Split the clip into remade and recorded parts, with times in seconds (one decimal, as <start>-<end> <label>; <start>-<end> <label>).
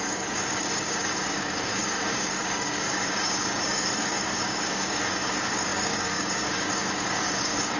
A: 0.0-7.8 remade